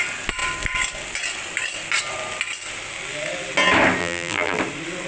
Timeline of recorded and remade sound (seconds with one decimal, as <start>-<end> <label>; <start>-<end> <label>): 0.0-4.0 recorded; 4.0-4.6 remade; 4.6-5.1 recorded